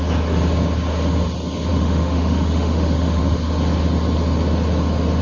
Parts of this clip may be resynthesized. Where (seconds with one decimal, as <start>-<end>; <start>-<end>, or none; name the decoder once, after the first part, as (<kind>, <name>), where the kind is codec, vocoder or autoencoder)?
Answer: 1.7-3.2 (autoencoder, DAC-VAE)